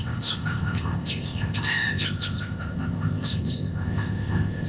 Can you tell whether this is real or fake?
fake